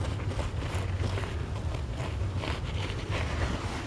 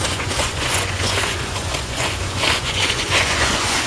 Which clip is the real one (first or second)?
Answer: first